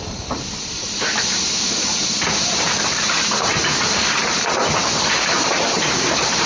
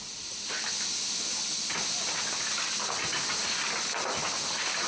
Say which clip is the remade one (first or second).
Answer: first